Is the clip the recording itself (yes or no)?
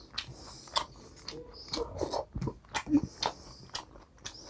yes